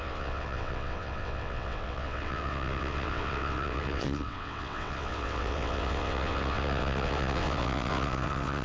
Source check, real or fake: fake